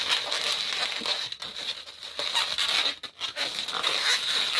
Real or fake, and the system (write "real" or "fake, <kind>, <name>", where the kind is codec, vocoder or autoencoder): real